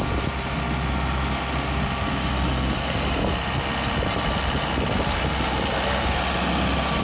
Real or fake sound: real